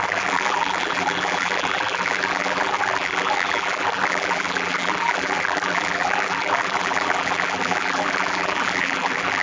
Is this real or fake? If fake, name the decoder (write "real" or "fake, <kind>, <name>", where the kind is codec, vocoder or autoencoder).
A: fake, vocoder, BigVGAN v2